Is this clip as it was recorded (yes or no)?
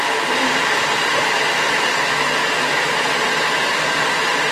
yes